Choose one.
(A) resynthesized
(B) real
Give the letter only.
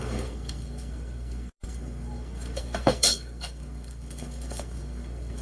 A